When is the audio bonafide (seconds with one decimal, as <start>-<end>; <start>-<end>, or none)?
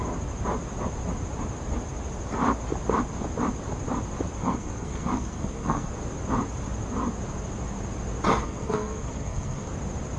0.0-4.4; 5.9-8.3; 9.7-10.2